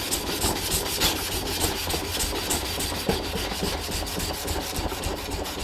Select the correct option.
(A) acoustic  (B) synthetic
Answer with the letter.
A